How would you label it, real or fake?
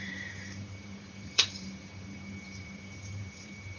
fake